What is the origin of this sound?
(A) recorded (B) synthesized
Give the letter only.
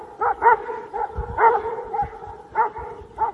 A